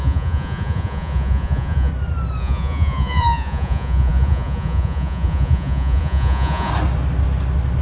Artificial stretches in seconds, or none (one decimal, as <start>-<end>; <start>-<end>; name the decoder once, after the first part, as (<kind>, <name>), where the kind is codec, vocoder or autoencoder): 0.0-1.9 (vocoder, Vocos); 2.4-6.7